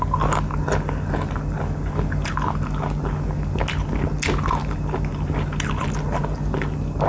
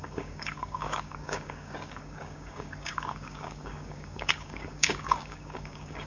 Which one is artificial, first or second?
second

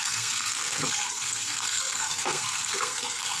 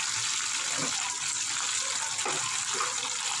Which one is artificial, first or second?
first